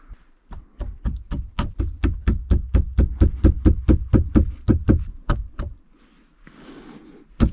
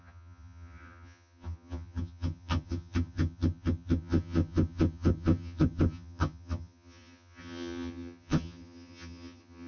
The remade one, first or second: second